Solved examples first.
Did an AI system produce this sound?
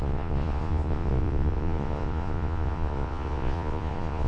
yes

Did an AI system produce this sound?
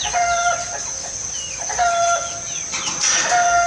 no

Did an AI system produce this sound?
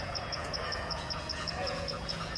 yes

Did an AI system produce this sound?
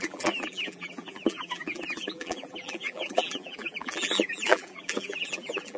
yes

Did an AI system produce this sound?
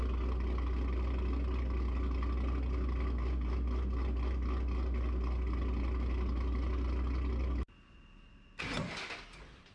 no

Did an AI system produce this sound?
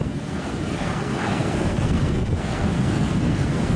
yes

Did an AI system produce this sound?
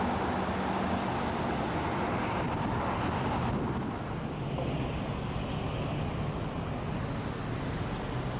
no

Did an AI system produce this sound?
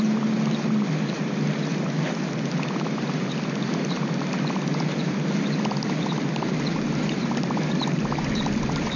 no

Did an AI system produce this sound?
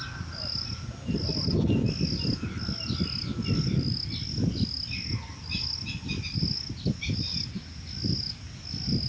no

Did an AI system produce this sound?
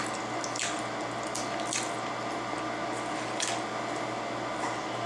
no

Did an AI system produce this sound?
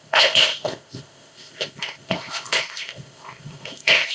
yes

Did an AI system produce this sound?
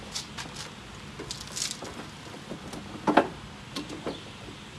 no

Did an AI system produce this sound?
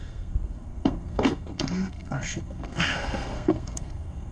yes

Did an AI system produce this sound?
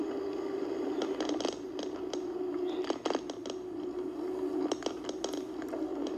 no